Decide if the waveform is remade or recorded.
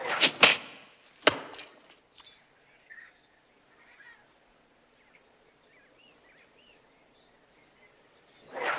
recorded